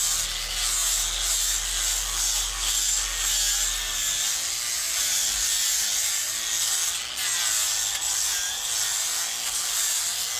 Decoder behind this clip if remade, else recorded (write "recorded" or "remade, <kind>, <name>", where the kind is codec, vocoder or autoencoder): recorded